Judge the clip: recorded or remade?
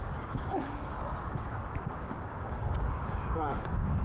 remade